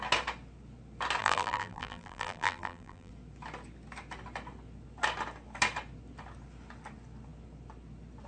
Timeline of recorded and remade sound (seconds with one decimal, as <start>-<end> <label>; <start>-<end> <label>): 0.0-1.2 recorded; 1.2-3.1 remade; 3.1-8.3 recorded